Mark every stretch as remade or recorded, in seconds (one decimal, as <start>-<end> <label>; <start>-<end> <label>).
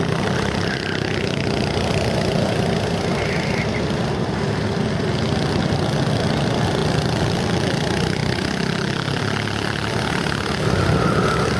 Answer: 0.0-11.6 recorded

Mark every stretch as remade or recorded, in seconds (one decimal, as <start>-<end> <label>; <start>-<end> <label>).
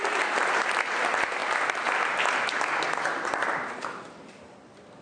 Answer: 0.0-5.0 recorded